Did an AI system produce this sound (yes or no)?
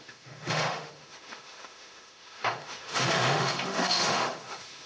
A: yes